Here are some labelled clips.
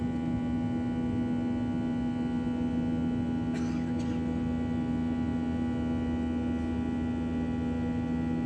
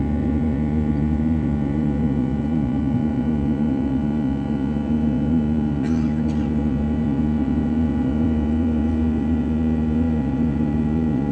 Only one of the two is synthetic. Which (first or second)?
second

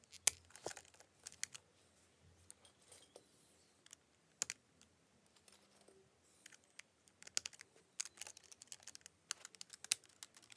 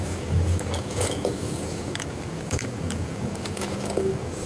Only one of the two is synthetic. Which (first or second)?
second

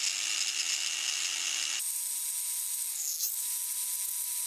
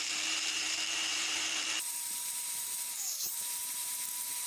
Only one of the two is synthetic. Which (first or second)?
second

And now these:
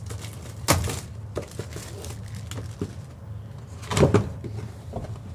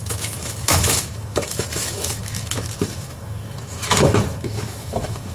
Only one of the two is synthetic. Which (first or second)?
second